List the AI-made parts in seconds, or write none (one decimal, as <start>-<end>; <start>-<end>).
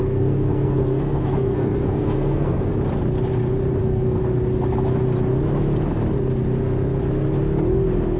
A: 0.0-2.7; 3.8-4.2